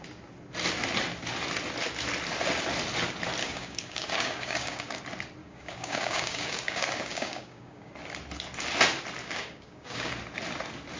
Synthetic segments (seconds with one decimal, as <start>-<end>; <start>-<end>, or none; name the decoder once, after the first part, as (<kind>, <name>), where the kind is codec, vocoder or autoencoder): 3.4-5.0 (codec, DAC); 5.4-7.9; 9.2-10.1